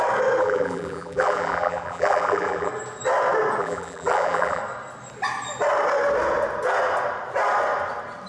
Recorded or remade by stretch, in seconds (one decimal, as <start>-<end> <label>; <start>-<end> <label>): 0.0-0.4 recorded; 0.4-2.7 remade; 2.7-3.6 recorded; 3.6-4.6 remade; 4.6-8.3 recorded